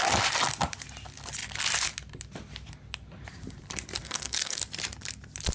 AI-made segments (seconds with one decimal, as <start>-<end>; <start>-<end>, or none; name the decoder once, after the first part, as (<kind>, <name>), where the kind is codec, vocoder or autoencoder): 4.0-4.6 (codec, SNAC)